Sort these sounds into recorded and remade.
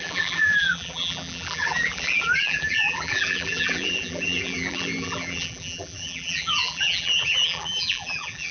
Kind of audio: remade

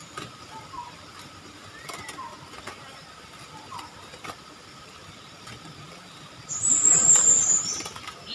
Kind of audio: remade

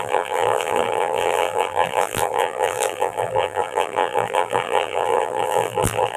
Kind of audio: remade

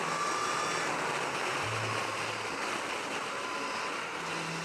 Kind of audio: recorded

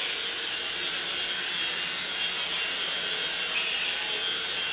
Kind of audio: recorded